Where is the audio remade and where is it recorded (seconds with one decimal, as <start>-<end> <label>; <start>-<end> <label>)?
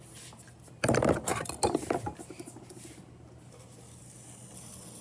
0.0-5.0 recorded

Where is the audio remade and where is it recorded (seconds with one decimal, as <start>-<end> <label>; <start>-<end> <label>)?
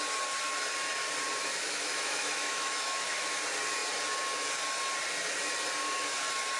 0.0-1.4 recorded; 1.4-3.3 remade; 3.3-6.6 recorded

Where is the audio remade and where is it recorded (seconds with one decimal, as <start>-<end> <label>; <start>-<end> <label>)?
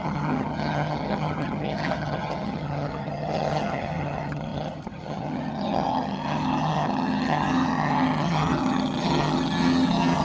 0.0-10.2 remade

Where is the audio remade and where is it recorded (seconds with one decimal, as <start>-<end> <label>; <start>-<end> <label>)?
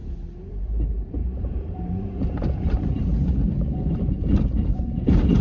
0.0-0.5 recorded; 0.5-3.1 remade; 3.1-4.8 recorded; 4.8-5.4 remade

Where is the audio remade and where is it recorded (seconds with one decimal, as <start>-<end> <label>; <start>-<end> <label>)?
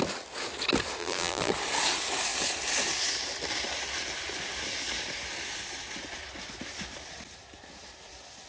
0.0-1.0 recorded; 1.0-1.5 remade; 1.5-8.5 recorded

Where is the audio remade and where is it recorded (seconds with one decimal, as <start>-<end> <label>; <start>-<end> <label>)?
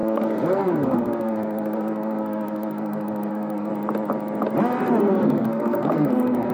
0.0-3.7 remade; 3.7-5.0 recorded; 5.0-6.5 remade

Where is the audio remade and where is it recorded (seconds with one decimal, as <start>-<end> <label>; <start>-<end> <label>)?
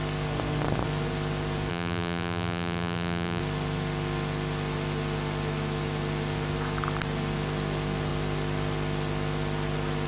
0.0-1.7 recorded; 1.7-3.4 remade; 3.4-10.1 recorded